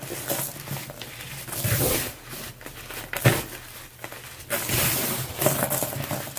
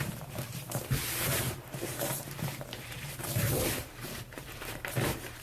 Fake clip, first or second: second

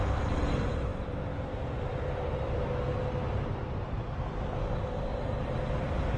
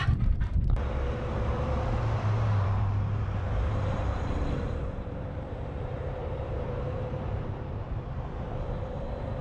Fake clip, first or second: second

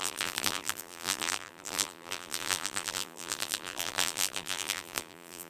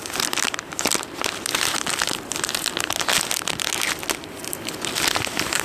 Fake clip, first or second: first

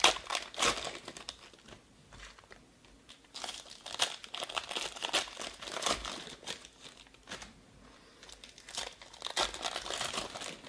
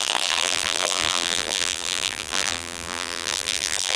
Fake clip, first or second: second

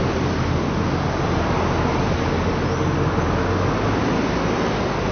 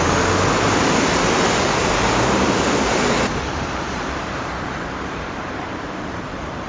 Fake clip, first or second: second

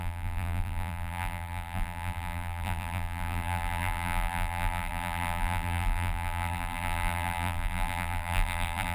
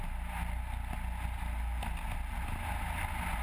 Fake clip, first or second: first